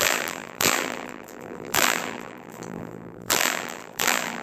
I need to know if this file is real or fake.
fake